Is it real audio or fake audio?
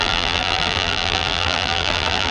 fake